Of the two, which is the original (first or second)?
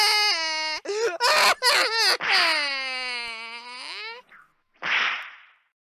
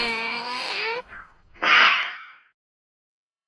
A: first